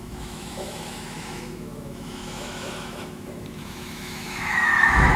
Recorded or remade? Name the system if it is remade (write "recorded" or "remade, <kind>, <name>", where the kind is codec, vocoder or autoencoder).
remade, autoencoder, DAC-VAE